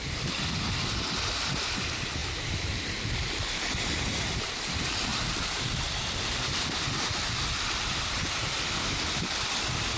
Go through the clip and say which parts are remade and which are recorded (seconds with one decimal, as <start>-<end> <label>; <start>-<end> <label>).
0.0-2.2 recorded; 2.2-4.5 remade; 4.5-10.0 recorded